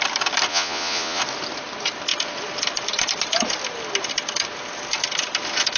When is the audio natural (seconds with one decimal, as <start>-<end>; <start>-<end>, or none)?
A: 0.0-0.5; 1.2-5.8